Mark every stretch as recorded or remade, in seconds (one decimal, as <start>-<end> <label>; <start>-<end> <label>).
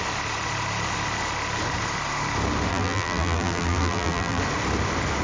0.0-2.7 recorded; 2.7-4.4 remade; 4.4-5.2 recorded